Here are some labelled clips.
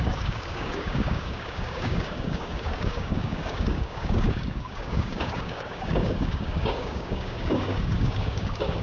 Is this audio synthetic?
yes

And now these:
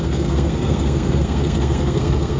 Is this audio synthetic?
yes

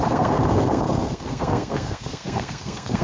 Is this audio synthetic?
yes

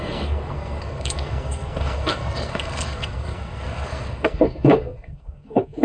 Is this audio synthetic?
yes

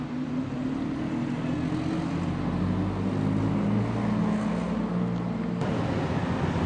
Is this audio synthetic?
no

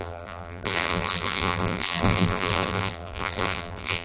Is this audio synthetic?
yes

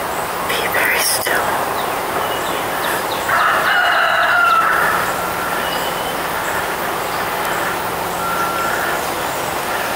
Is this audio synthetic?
no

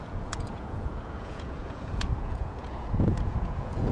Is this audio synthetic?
yes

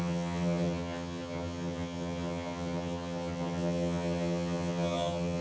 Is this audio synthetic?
yes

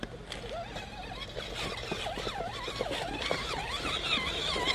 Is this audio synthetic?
no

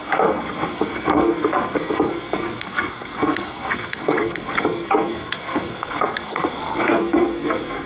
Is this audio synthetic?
yes